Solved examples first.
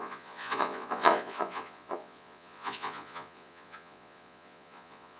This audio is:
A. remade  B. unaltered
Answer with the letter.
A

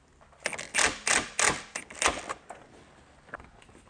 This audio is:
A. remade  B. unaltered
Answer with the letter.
B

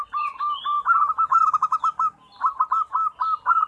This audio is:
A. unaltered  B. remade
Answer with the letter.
A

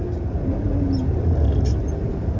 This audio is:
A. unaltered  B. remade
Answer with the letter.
A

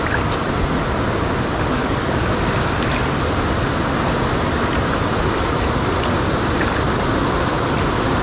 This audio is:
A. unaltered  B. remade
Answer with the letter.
A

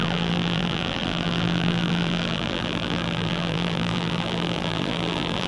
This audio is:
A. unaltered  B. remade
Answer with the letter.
B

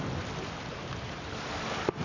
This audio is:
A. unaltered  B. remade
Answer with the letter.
A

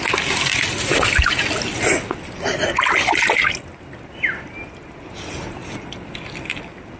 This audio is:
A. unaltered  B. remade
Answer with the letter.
A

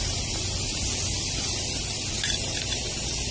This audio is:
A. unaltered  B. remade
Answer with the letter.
A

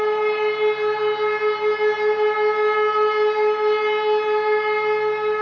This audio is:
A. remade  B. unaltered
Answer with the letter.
B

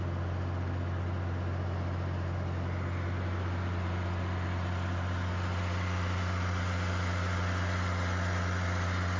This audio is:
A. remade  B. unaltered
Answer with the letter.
B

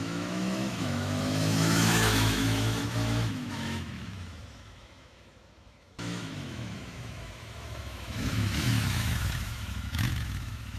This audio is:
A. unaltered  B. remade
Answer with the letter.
B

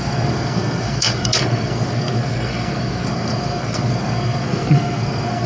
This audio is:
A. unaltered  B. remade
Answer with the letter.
B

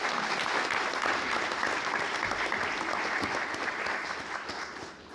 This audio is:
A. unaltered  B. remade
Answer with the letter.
A